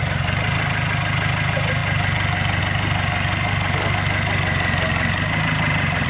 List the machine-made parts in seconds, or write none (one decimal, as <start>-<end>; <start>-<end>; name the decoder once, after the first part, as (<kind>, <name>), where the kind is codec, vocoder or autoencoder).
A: none